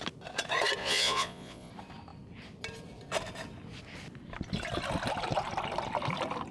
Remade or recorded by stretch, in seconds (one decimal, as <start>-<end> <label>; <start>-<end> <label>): 0.0-0.8 recorded; 0.8-1.7 remade; 1.7-6.5 recorded